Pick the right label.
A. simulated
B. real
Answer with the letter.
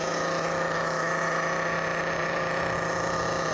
B